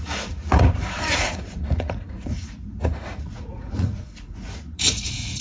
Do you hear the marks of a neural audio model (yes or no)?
yes